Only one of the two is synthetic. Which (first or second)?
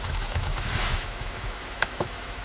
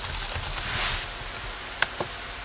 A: first